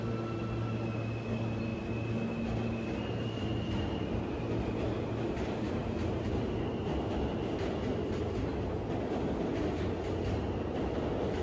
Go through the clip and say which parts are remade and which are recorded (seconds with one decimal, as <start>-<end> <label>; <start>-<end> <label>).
0.0-11.4 recorded